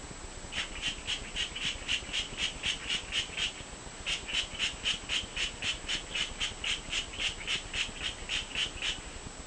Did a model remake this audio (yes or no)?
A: no